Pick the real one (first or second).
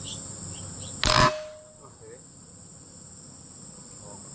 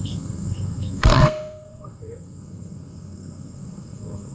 first